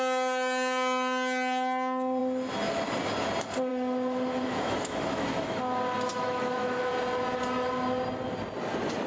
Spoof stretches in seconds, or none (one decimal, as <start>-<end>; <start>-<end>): 3.7-5.6; 6.1-6.9